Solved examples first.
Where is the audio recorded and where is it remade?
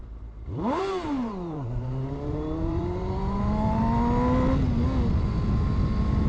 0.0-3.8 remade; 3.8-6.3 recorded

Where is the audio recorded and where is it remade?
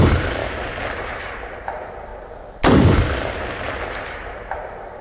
0.0-0.4 remade; 0.4-1.0 recorded; 1.0-2.1 remade; 2.1-4.1 recorded; 4.1-5.0 remade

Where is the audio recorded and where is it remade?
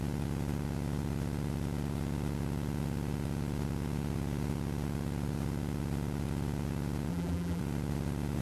0.0-7.1 recorded; 7.1-7.6 remade; 7.6-8.4 recorded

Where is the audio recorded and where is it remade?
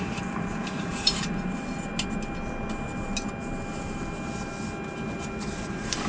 0.0-1.9 remade; 1.9-5.6 recorded; 5.6-6.1 remade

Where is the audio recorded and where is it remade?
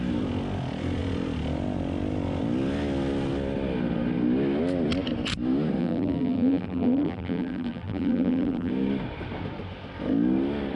0.0-5.8 recorded; 5.8-8.7 remade; 8.7-10.8 recorded